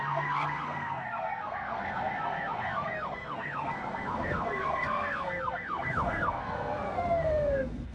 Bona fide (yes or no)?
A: no